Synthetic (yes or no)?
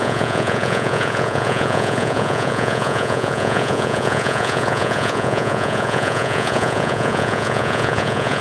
yes